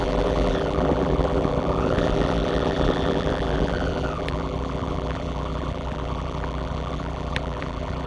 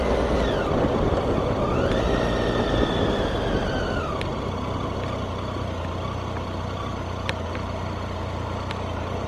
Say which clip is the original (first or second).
second